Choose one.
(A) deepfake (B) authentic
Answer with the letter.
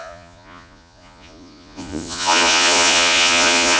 A